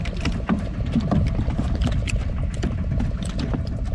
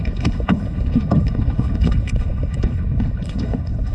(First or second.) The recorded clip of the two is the first